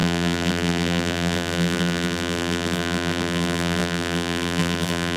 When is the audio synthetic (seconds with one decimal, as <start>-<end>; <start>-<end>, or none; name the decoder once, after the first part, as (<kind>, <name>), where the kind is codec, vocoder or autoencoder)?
0.0-5.2 (vocoder, BigVGAN v2)